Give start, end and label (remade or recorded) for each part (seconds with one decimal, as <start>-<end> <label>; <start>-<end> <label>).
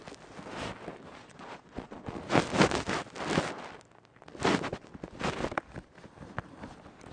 0.0-1.2 recorded; 1.2-2.2 remade; 2.2-7.1 recorded